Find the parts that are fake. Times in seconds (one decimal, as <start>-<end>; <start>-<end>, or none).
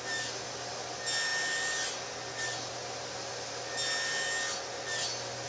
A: none